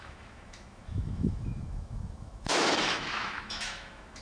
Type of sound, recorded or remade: remade